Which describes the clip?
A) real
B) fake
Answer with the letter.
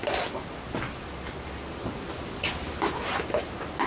A